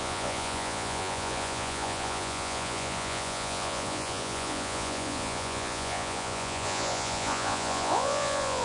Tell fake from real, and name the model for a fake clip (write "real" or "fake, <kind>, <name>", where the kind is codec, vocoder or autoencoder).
fake, vocoder, Vocos